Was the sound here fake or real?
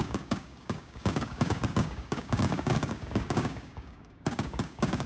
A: fake